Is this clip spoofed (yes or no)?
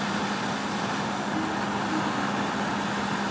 no